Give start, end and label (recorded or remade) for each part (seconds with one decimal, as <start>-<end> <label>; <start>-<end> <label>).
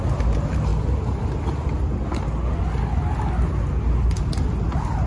0.0-0.7 remade; 0.7-3.8 recorded; 3.8-5.1 remade